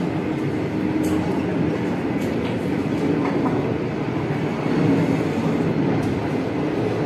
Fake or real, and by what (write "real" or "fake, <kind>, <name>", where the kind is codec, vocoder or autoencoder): real